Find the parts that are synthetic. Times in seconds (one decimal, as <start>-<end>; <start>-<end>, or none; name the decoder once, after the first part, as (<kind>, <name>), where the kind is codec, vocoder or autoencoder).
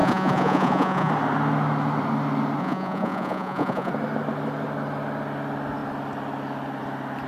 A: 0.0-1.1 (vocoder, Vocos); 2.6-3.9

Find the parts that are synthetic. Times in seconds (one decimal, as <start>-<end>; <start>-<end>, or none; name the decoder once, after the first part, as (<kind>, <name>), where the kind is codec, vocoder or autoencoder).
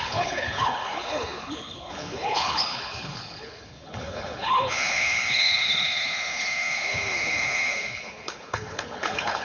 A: 0.0-9.4 (codec, HILCodec)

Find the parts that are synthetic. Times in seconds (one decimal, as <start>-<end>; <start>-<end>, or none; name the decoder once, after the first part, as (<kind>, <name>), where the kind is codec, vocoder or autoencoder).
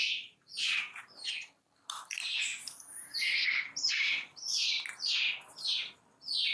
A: none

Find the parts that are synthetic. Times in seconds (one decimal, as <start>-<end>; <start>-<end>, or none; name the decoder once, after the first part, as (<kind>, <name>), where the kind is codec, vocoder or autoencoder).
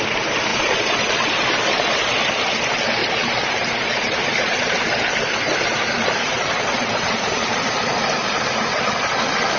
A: 0.5-2.2 (vocoder, BigVGAN v2); 3.0-7.6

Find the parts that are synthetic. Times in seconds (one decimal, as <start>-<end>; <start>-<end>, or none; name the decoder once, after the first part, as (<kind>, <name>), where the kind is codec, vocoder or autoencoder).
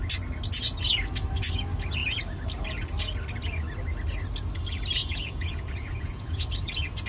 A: 5.0-6.5 (vocoder, Vocos)